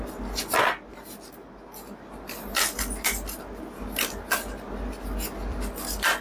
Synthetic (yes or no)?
no